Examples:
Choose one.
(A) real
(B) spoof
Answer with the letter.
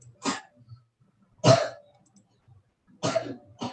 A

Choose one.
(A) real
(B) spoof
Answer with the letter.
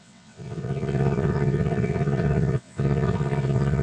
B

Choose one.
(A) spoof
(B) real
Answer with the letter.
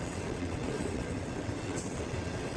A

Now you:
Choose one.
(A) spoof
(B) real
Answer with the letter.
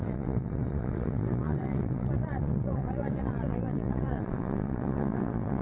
A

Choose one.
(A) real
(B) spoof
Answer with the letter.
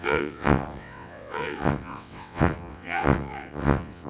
B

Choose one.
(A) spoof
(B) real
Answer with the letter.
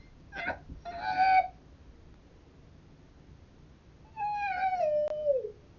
B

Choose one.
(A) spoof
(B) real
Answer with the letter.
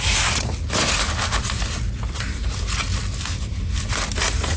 B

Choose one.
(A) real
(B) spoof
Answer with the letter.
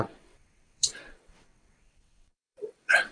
B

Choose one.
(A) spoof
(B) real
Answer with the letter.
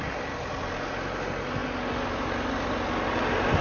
B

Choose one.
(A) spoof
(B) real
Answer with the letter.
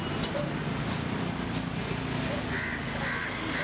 B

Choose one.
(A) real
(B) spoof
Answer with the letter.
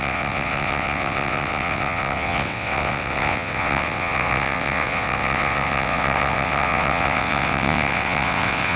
B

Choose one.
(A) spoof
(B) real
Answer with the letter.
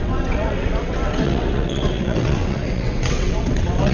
A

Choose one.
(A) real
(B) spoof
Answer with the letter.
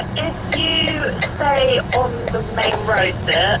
B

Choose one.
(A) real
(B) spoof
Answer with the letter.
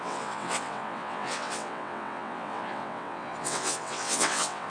B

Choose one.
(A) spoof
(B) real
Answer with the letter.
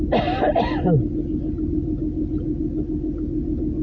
B